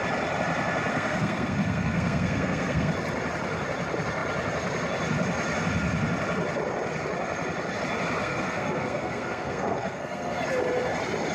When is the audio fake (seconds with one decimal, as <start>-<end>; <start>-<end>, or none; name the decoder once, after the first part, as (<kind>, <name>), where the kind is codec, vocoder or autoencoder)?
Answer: 0.9-2.9 (codec, SNAC); 8.2-10.4